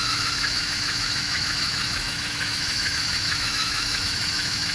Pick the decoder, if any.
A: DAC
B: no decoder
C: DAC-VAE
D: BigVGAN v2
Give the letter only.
C